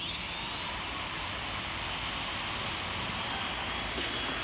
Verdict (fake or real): real